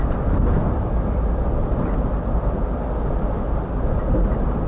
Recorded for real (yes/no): yes